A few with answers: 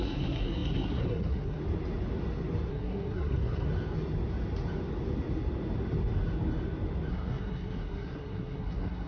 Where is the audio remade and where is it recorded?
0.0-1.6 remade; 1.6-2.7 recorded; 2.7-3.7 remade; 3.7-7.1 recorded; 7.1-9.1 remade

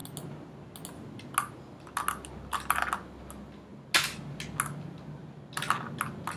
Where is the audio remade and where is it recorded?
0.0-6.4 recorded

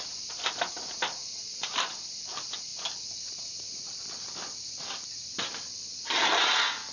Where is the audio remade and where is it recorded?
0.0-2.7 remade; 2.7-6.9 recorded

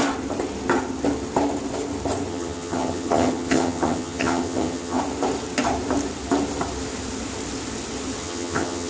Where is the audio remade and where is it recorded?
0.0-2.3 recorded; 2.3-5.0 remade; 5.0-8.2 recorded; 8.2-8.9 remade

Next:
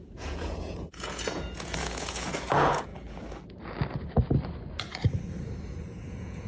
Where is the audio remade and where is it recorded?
0.0-2.9 remade; 2.9-5.6 recorded; 5.6-6.5 remade

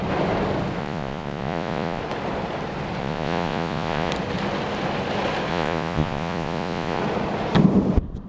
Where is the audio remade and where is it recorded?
0.0-0.8 recorded; 0.8-2.0 remade; 2.0-3.0 recorded; 3.0-4.1 remade; 4.1-5.5 recorded; 5.5-7.0 remade; 7.0-8.3 recorded

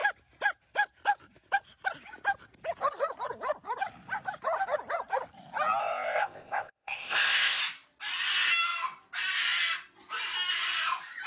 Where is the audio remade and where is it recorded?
0.0-5.8 recorded; 5.8-7.6 remade; 7.6-11.3 recorded

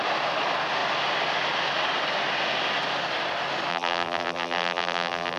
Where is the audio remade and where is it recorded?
0.0-3.7 recorded; 3.7-5.4 remade